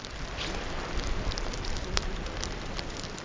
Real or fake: fake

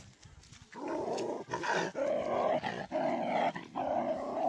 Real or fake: fake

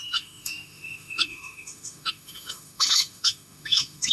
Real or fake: fake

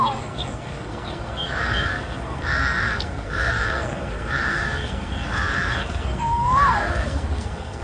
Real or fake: fake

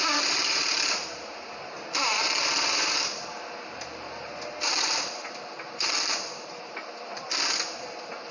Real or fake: real